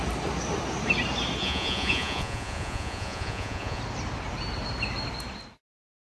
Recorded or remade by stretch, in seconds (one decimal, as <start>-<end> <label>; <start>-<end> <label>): 0.0-1.4 recorded; 1.4-3.8 remade; 3.8-6.1 recorded